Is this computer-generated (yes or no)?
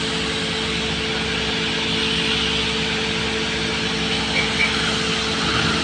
no